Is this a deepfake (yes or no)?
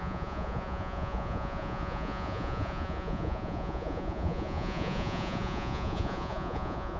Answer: yes